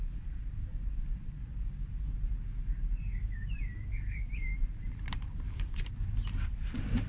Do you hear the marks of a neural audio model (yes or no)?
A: yes